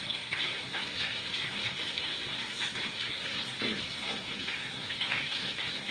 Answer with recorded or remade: remade